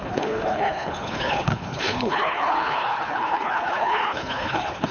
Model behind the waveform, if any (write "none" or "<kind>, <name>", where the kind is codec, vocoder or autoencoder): codec, HILCodec